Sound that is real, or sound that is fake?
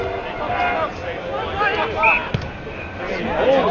real